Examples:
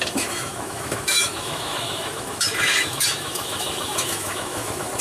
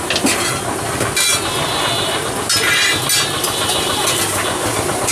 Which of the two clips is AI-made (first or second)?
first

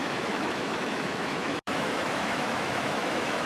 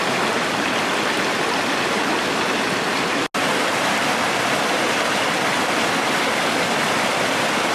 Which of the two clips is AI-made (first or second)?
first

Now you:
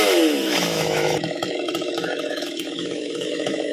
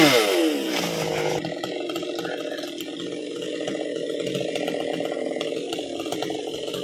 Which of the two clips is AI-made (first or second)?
first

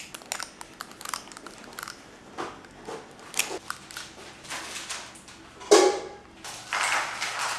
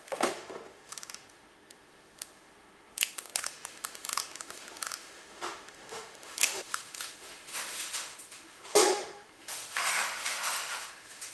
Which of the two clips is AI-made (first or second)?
second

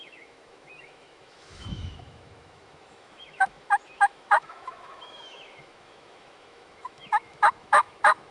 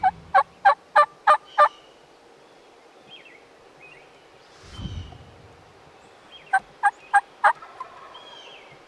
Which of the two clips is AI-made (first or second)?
first